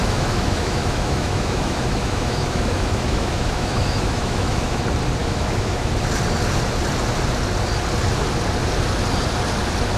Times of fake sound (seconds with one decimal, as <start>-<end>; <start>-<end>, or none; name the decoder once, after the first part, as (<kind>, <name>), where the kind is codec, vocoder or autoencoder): 0.0-4.8 (autoencoder, DAC-VAE); 5.2-5.9